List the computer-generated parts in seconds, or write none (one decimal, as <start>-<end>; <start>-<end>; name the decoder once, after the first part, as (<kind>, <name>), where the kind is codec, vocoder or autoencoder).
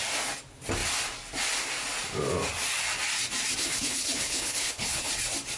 3.6-5.1 (codec, HILCodec)